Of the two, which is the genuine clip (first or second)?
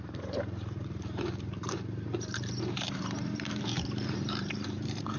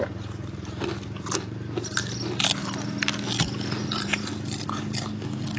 second